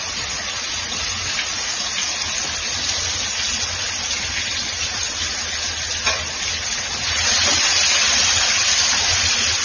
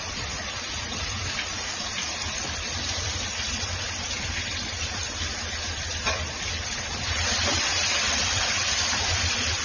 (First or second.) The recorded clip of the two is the first